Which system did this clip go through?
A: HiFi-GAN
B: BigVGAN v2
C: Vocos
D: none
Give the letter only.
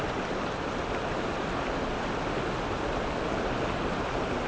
D